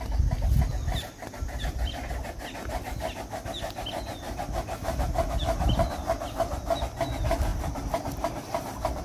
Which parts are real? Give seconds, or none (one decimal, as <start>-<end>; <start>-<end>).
0.0-9.0